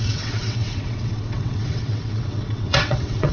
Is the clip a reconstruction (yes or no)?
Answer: yes